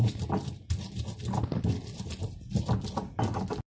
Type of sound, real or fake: real